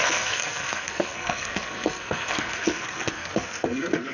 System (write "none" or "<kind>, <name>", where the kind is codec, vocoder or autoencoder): codec, SNAC